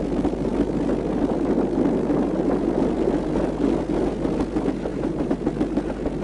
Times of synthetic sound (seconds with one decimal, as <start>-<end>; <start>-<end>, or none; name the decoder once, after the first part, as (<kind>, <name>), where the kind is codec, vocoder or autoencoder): 4.9-5.5 (vocoder, BigVGAN v2)